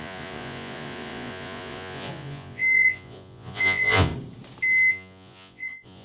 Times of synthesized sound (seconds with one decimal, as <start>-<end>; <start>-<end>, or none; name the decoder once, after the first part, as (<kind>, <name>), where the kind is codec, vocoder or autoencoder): 0.0-4.1 (vocoder, Vocos); 4.9-6.0